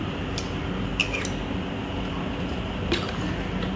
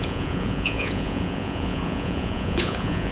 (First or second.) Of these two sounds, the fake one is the second